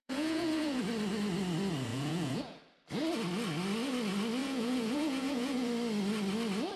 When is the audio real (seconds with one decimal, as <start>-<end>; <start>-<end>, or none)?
0.8-1.9; 2.6-4.4; 5.7-6.8